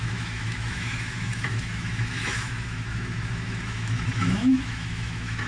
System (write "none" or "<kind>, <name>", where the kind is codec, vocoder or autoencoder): autoencoder, DAC-VAE